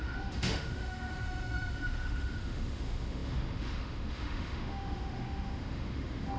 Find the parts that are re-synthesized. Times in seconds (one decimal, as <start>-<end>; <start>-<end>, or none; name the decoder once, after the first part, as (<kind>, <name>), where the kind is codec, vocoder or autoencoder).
0.0-6.4 (autoencoder, DAC-VAE)